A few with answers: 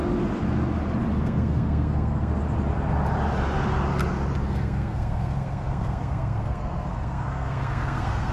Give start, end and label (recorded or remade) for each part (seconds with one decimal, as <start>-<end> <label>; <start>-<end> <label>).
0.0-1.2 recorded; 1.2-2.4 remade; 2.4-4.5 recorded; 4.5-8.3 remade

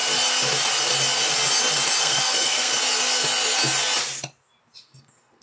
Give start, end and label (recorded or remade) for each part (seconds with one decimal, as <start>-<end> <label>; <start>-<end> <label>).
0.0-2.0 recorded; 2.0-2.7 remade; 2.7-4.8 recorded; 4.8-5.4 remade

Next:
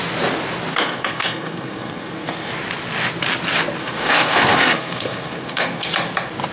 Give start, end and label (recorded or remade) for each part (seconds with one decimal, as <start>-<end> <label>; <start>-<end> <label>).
0.0-0.7 recorded; 0.7-2.5 remade; 2.5-3.8 recorded; 3.8-5.9 remade; 5.9-6.5 recorded

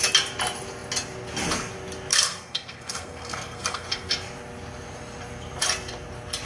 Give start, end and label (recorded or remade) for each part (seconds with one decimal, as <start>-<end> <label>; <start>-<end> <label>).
0.0-2.1 recorded; 2.1-4.1 remade; 4.1-6.5 recorded

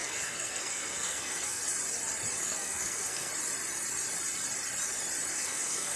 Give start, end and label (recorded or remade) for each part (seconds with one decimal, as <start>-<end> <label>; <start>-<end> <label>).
0.0-1.6 remade; 1.6-2.4 recorded; 2.4-3.3 remade; 3.3-5.3 recorded; 5.3-6.0 remade

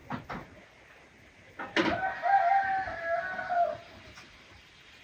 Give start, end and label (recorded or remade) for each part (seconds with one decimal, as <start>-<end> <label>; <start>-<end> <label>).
0.0-5.0 recorded

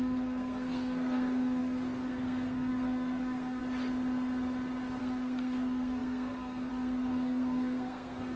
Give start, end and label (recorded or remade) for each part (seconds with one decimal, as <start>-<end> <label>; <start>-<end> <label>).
0.0-3.6 remade; 3.6-5.0 recorded; 5.0-8.4 remade

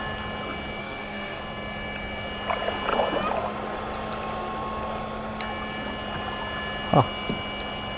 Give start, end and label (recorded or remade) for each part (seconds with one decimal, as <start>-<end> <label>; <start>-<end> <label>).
0.0-0.8 recorded; 0.8-1.4 remade; 1.4-8.0 recorded